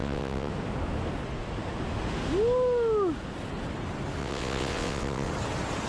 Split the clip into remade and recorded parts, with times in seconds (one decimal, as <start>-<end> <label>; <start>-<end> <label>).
0.0-0.5 remade; 0.5-4.2 recorded; 4.2-5.3 remade; 5.3-5.9 recorded